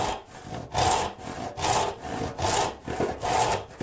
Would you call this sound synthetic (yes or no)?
no